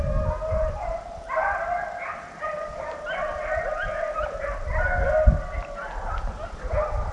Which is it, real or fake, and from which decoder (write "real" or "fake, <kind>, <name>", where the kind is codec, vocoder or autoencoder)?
real